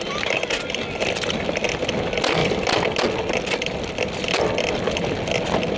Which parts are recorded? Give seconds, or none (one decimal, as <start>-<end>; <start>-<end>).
0.0-5.8